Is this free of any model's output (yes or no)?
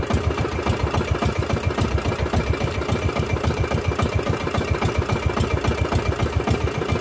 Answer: yes